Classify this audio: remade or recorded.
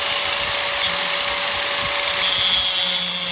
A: recorded